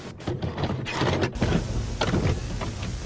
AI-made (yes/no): no